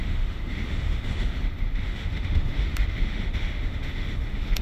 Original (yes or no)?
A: no